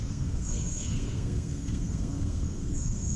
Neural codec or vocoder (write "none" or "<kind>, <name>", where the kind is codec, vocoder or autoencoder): codec, SNAC